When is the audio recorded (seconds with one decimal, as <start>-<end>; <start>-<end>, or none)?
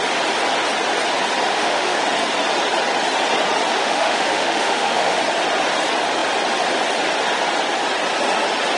0.0-1.5; 2.0-3.8; 5.2-8.8